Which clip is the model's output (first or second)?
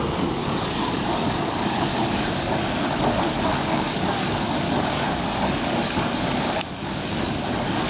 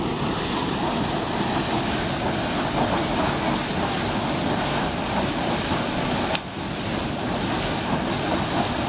first